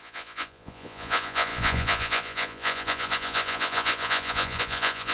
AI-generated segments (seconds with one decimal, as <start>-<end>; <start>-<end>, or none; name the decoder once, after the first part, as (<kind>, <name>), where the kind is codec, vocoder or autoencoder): 0.0-5.1 (vocoder, Vocos)